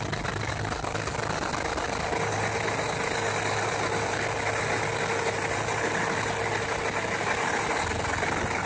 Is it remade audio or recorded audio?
recorded